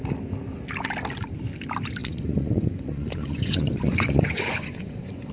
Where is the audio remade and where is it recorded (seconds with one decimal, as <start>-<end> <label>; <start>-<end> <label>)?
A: 0.0-2.0 recorded; 2.0-5.3 remade